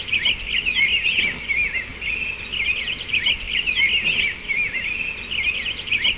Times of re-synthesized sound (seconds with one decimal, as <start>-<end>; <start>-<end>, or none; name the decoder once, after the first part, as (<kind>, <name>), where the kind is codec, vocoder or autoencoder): none